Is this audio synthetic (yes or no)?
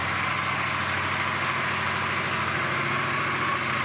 no